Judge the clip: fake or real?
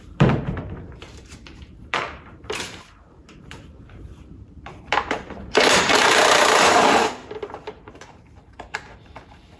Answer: fake